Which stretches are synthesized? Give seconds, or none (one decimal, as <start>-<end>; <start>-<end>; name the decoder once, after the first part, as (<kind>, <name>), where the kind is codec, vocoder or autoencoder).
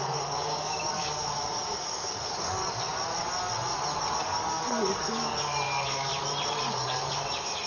0.0-2.6 (codec, DAC); 4.1-6.1; 6.6-7.7